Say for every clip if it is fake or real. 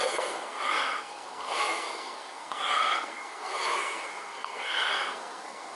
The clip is fake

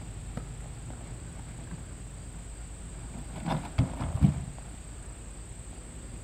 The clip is real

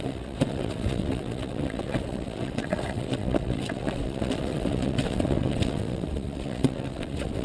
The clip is fake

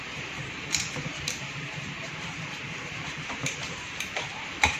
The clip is fake